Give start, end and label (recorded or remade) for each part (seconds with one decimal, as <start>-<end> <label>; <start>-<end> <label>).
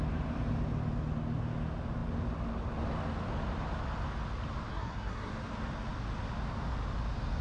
0.0-4.7 recorded; 4.7-5.3 remade; 5.3-7.4 recorded